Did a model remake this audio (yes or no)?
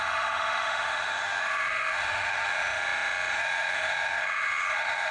yes